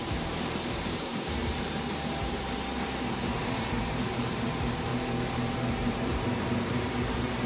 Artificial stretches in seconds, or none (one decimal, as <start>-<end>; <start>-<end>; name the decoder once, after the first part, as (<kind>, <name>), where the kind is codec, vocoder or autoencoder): 0.0-4.9 (vocoder, BigVGAN v2); 5.9-7.5